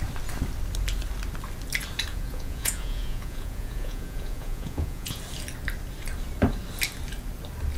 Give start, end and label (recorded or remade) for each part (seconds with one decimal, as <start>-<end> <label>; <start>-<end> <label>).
0.0-2.1 recorded; 2.1-5.2 remade; 5.2-7.8 recorded